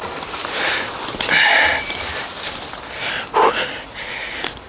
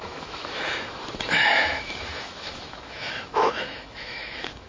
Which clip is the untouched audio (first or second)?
first